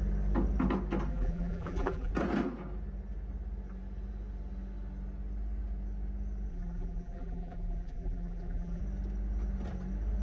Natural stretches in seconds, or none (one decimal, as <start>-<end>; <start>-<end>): 0.0-1.1; 2.1-6.5; 8.8-10.2